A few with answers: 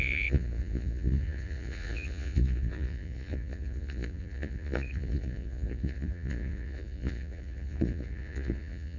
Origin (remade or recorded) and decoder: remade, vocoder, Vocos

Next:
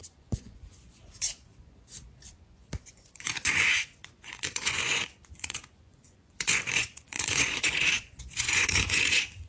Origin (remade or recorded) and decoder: remade, vocoder, Vocos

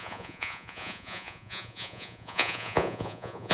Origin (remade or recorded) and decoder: remade, vocoder, Vocos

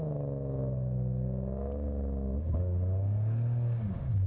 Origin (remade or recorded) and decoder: recorded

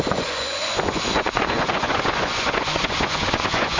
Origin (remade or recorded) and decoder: remade, vocoder, Vocos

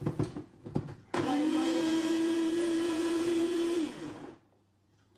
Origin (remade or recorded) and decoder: remade, vocoder, Vocos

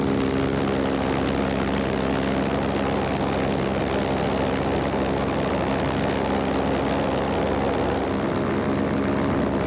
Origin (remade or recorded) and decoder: recorded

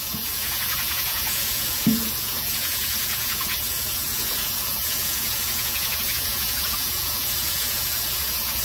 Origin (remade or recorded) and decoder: remade, vocoder, Vocos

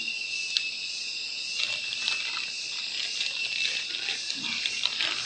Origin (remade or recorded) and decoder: recorded